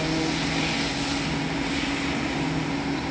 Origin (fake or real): real